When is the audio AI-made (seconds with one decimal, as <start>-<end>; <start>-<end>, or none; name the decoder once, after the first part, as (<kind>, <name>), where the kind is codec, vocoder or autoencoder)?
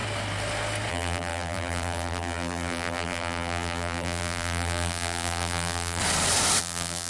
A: 0.9-6.0 (vocoder, BigVGAN v2); 6.6-7.1